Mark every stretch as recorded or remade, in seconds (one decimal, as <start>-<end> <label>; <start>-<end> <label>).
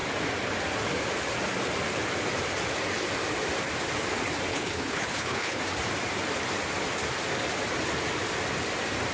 0.0-4.5 recorded; 4.5-5.6 remade; 5.6-9.1 recorded